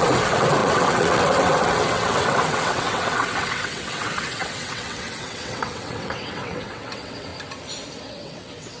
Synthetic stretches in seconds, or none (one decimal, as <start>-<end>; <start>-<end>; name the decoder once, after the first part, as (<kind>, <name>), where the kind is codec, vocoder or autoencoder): 0.0-7.3 (vocoder, WaveNeXt); 8.0-8.8